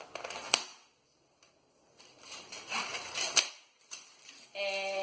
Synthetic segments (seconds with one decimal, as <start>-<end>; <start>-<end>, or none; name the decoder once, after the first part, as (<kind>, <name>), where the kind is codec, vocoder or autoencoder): none